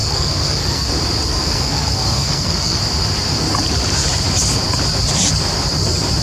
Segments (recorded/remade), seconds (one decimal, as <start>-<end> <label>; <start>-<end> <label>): 0.0-0.9 remade; 0.9-1.3 recorded; 1.3-2.8 remade; 2.8-6.2 recorded